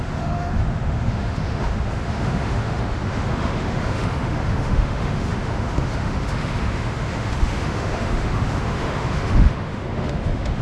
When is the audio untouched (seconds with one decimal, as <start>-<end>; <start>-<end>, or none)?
none